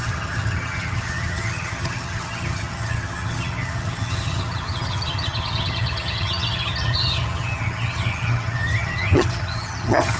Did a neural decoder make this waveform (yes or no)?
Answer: yes